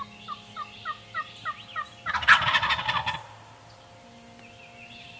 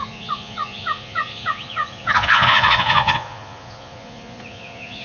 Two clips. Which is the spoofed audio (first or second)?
second